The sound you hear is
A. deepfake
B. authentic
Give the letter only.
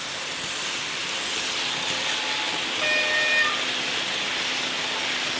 B